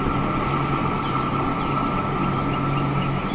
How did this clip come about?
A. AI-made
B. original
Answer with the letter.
B